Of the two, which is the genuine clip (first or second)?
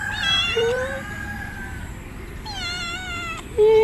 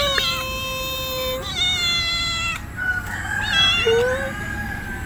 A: second